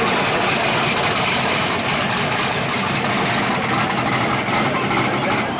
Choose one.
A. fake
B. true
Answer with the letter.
B